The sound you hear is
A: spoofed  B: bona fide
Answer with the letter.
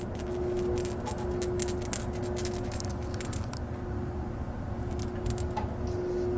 B